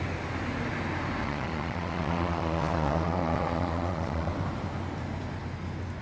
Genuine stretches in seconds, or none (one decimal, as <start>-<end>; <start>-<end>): 0.0-1.2; 4.3-6.0